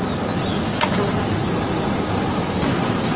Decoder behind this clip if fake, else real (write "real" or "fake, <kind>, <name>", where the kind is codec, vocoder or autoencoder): real